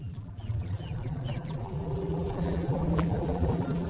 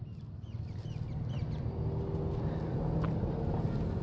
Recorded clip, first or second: second